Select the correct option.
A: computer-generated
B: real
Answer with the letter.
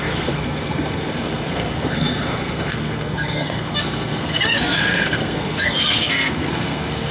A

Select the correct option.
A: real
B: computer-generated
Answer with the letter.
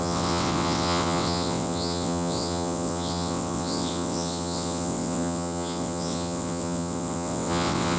B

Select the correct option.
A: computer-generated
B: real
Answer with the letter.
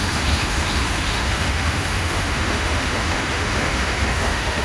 A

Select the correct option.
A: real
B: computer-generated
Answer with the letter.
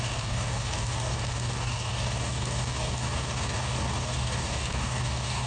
B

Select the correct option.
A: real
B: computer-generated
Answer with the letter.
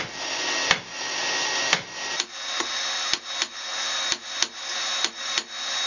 A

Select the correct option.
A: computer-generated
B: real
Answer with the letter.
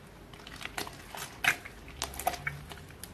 B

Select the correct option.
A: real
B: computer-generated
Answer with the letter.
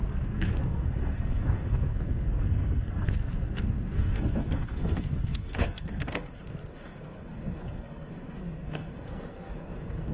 B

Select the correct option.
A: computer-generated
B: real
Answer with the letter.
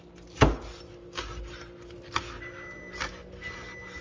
B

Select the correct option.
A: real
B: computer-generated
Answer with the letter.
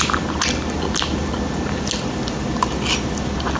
A